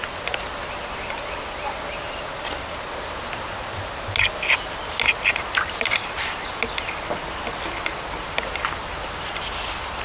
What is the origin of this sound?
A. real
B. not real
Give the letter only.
A